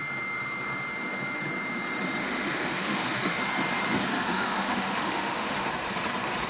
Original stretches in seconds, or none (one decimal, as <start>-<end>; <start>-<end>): 0.0-2.2; 3.4-4.1; 5.7-6.5